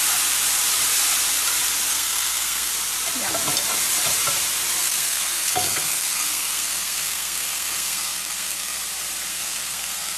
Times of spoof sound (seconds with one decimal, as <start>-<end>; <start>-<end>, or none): 1.9-2.7; 4.8-8.8; 9.3-10.2

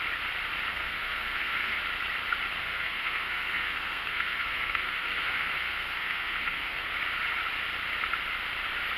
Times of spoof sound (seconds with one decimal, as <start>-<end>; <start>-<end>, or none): 0.7-1.8; 2.6-6.9

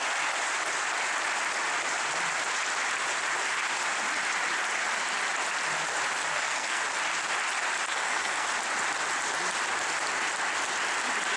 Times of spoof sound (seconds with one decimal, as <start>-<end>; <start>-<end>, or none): 6.3-6.8; 7.9-8.5